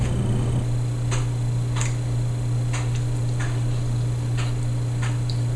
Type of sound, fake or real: real